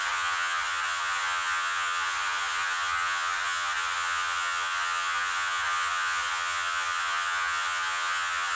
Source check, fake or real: fake